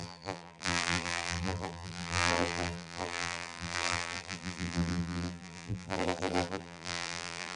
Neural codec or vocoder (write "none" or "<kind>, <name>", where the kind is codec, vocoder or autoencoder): vocoder, BigVGAN v2